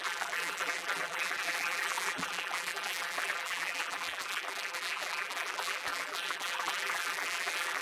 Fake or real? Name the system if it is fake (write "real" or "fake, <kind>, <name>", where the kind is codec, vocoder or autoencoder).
fake, vocoder, BigVGAN v2